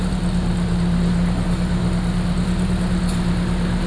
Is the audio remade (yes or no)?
no